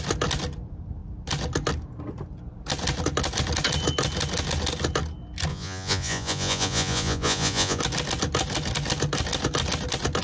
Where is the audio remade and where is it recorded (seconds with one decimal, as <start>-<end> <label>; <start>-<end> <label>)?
0.0-5.5 recorded; 5.5-7.8 remade; 7.8-10.2 recorded